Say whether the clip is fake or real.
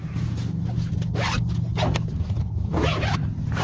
real